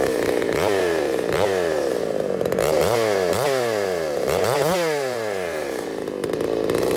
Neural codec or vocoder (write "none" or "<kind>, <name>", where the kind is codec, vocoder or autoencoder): vocoder, BigVGAN v2